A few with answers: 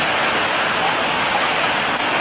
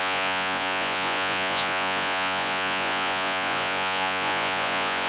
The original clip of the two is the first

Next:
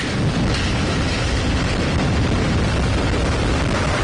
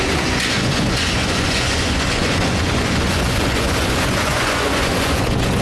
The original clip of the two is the first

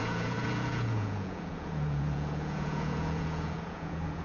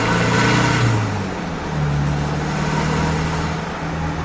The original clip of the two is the second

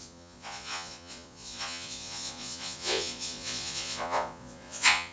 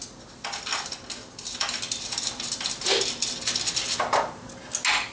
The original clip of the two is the second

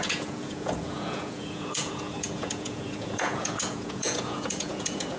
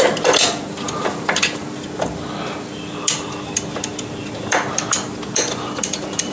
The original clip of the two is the second